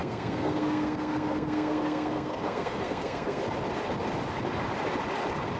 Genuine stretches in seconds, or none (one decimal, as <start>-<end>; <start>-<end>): 3.4-5.6